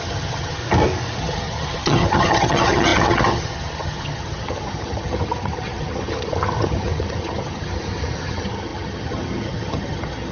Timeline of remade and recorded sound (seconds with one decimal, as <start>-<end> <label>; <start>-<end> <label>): 0.0-0.6 remade; 0.6-1.2 recorded; 1.2-10.3 remade